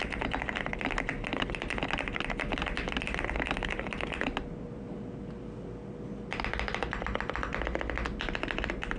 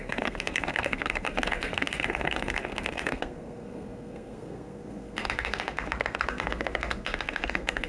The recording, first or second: first